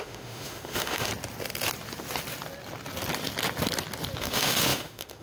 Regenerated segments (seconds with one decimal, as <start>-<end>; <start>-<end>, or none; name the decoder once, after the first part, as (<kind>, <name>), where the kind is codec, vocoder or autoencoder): 0.0-1.1 (autoencoder, DAC-VAE); 4.2-5.2